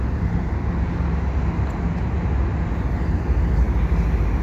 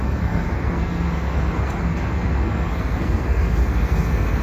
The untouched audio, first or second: first